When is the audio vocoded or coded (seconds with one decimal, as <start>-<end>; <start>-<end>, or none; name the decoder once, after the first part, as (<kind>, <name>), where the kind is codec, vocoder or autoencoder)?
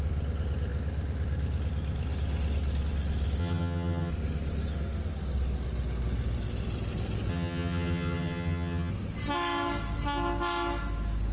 3.4-4.1 (vocoder, HiFi-GAN); 7.3-8.9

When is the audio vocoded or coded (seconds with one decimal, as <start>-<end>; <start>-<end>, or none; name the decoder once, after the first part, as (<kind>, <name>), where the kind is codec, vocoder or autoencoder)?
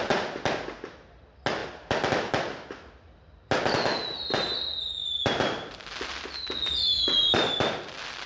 none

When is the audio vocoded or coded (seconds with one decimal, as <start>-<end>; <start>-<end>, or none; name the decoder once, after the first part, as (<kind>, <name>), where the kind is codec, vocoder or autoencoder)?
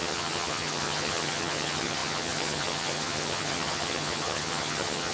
0.0-5.1 (vocoder, HiFi-GAN)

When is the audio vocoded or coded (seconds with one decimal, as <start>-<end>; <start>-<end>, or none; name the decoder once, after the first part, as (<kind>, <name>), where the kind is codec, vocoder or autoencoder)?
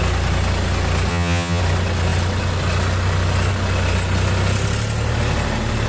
1.1-1.6 (vocoder, HiFi-GAN)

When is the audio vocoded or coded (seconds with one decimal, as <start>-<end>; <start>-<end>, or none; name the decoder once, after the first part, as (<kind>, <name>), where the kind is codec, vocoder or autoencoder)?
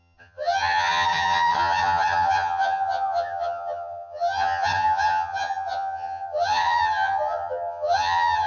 0.0-8.5 (vocoder, HiFi-GAN)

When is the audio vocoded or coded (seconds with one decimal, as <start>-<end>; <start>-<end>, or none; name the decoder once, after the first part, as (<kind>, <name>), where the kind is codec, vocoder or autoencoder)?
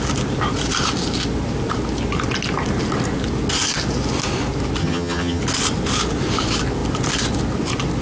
4.8-5.4 (vocoder, HiFi-GAN)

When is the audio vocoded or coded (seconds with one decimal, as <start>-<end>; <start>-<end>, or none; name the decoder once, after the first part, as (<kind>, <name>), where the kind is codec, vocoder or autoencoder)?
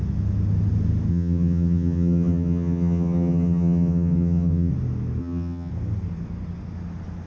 1.1-4.7 (vocoder, HiFi-GAN); 5.2-5.7